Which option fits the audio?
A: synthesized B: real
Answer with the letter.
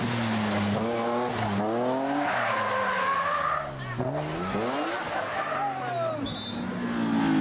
B